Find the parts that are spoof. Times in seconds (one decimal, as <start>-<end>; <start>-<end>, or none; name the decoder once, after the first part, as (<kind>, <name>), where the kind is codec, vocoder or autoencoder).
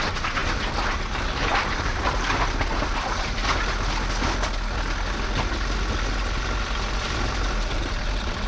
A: 0.0-3.4 (vocoder, BigVGAN v2); 6.0-8.5